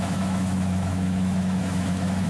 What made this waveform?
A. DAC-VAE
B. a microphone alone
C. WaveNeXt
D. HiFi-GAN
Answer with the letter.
A